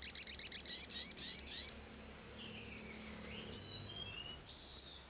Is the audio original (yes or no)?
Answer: yes